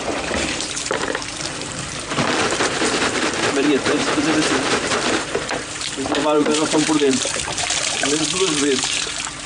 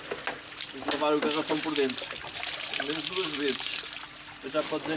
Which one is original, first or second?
second